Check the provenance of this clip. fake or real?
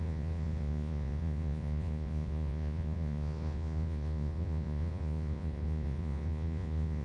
fake